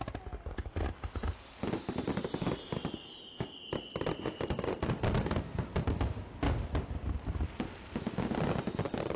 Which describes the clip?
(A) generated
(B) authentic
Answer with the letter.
B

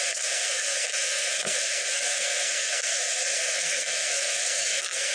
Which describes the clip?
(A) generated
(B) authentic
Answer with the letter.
A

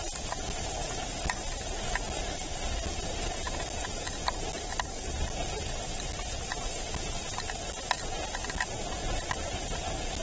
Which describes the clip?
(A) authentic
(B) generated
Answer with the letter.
A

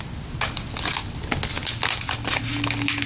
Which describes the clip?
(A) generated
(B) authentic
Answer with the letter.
B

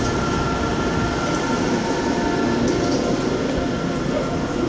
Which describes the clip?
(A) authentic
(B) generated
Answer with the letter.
A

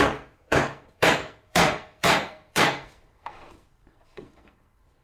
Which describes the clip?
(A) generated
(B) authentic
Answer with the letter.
A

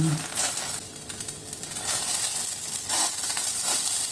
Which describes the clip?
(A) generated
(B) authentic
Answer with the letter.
B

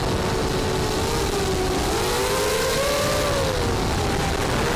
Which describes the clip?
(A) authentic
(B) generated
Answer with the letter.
A